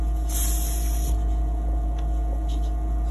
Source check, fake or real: real